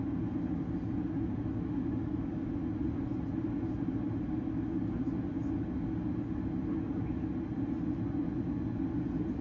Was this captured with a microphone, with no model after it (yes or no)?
yes